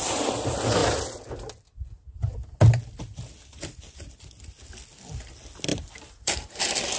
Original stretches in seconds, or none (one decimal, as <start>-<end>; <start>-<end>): 0.0-5.7; 6.6-7.0